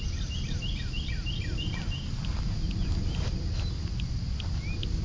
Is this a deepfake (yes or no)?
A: no